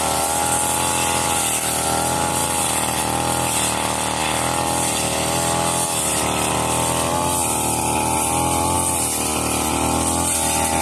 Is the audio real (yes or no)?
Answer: yes